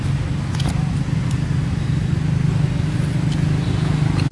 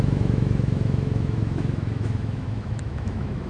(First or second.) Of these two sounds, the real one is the first